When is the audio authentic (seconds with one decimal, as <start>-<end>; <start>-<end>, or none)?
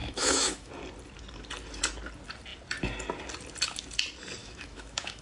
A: 0.7-4.4